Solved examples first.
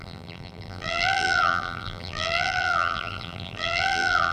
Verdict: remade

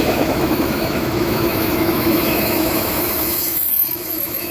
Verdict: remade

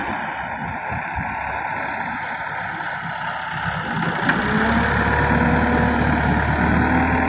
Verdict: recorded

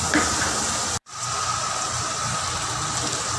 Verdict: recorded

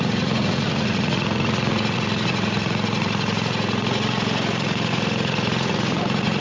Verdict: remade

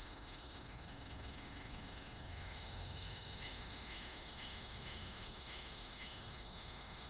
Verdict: remade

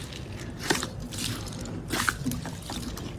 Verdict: recorded